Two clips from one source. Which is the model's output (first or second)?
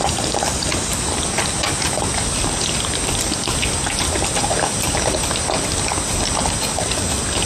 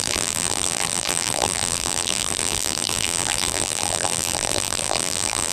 second